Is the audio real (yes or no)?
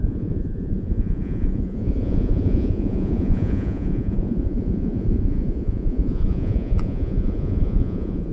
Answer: no